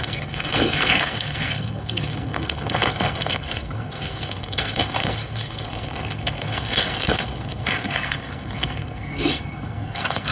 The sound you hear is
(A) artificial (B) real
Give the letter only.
A